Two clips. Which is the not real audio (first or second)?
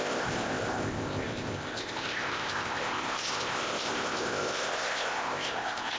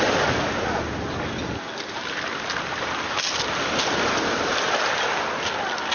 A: first